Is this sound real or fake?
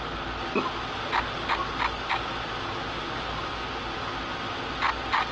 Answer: real